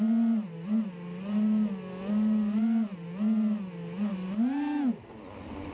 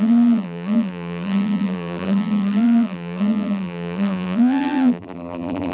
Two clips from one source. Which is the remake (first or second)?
second